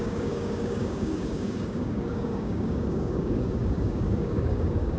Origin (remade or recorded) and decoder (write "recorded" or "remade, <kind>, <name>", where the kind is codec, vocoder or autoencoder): remade, codec, DAC